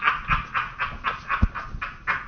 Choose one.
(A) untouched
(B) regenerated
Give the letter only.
A